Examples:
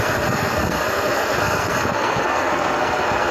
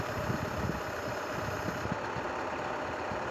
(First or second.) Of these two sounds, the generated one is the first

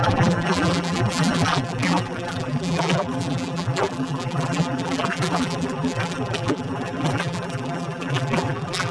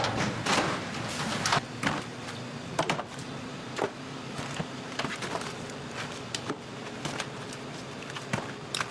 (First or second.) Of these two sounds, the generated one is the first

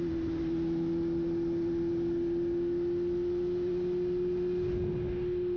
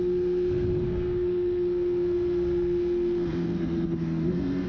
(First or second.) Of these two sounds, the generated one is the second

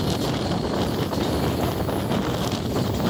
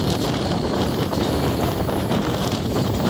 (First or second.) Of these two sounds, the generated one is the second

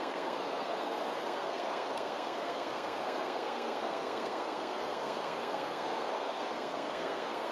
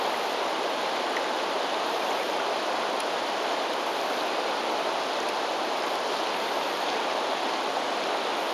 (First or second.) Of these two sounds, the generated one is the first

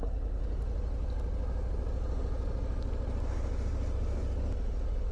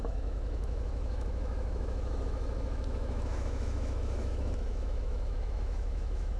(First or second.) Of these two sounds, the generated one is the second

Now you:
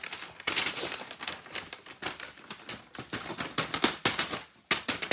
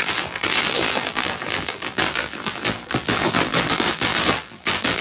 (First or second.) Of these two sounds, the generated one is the second